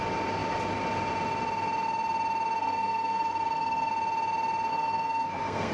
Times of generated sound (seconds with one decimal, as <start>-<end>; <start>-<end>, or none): 2.6-3.9; 4.7-5.7